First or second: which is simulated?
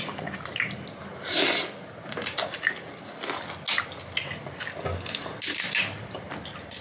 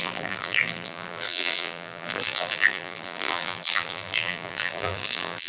second